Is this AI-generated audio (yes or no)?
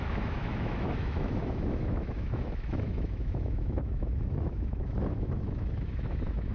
yes